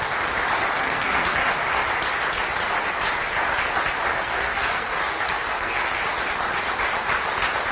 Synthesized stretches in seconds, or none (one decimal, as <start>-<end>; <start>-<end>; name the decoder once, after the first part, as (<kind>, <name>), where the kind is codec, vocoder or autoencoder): 0.8-1.5 (codec, SNAC); 4.1-6.0